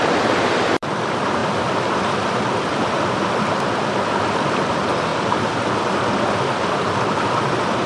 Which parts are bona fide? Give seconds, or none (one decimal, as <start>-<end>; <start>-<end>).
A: 1.4-1.9